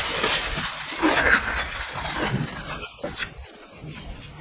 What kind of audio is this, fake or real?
real